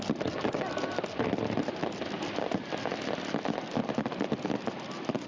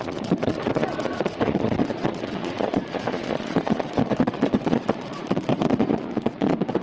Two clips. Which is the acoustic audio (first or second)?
first